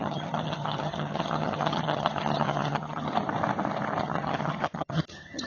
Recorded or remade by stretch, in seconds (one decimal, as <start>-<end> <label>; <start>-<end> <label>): 0.0-3.1 remade; 3.1-4.0 recorded; 4.0-5.5 remade